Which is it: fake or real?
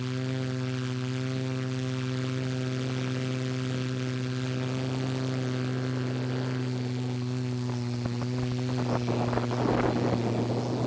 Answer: real